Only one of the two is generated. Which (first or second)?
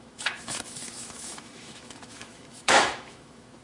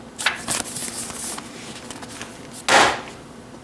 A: first